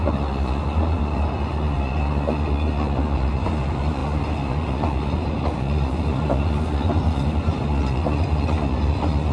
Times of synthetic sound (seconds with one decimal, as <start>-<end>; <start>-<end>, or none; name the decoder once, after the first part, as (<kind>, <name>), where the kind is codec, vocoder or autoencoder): 0.0-9.3 (vocoder, Vocos)